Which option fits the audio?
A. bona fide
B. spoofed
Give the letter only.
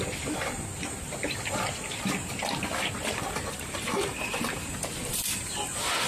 A